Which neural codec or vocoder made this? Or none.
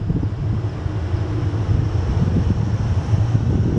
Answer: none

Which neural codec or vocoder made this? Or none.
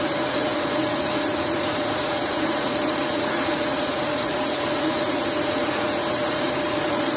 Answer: vocoder, Vocos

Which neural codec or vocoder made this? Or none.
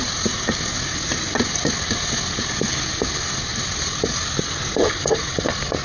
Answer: none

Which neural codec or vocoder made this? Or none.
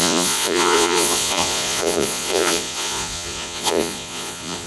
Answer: vocoder, Vocos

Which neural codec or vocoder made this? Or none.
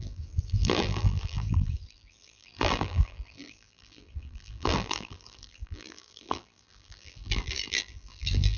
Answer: vocoder, BigVGAN v2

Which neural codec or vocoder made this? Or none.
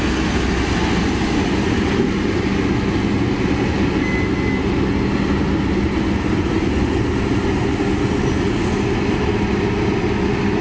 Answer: none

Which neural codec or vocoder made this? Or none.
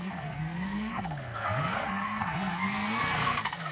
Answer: codec, SNAC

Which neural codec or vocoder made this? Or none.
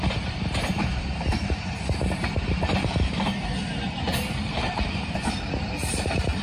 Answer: vocoder, BigVGAN v2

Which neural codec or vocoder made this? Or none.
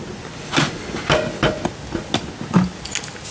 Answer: none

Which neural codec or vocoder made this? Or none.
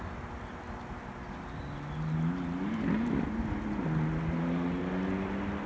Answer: none